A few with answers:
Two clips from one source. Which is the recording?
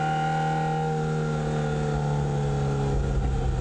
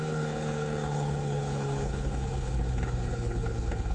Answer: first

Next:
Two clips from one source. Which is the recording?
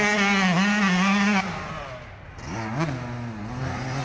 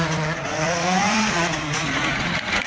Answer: first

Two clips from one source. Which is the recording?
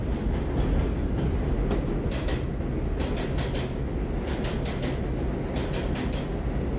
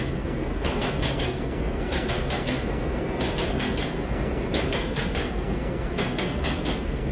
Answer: first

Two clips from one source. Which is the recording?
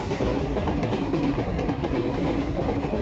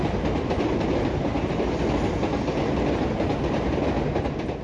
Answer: second